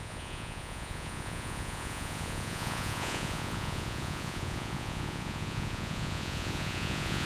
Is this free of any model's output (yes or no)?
no